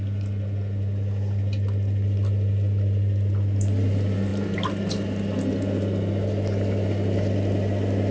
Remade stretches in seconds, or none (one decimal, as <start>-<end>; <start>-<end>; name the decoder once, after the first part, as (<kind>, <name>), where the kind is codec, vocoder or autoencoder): none